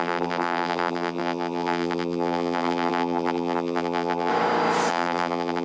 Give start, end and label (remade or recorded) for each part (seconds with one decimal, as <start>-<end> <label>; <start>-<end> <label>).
0.0-4.3 remade; 4.3-4.9 recorded; 4.9-5.6 remade